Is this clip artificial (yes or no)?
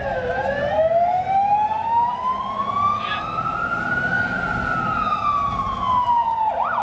no